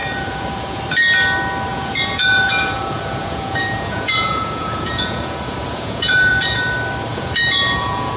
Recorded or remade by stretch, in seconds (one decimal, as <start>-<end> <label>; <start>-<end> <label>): 0.0-0.8 remade; 0.8-1.7 recorded; 1.7-6.6 remade; 6.6-7.1 recorded; 7.1-8.2 remade